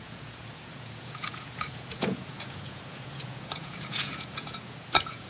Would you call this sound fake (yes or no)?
yes